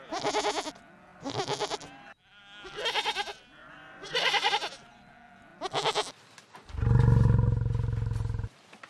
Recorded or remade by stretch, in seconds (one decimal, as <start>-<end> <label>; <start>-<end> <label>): 0.0-3.6 recorded; 3.6-4.5 remade; 4.5-8.9 recorded